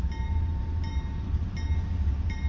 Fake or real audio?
real